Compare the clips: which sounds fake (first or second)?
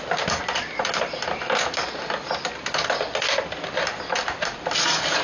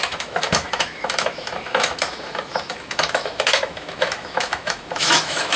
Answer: second